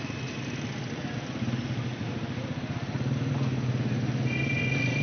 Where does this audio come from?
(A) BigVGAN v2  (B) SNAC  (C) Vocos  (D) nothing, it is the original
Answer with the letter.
D